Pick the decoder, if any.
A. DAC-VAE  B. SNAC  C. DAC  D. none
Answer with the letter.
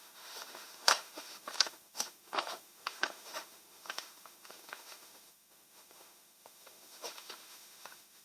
A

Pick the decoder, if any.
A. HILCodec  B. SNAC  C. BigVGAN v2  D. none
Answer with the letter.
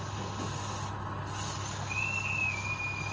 D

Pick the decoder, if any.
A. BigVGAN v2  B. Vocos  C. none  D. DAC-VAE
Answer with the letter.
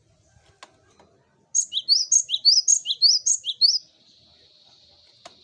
C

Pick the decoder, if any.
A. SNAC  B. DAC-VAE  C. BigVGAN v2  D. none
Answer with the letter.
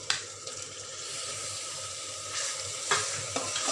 C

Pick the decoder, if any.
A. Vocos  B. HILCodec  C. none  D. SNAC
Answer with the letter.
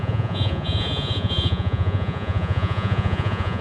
A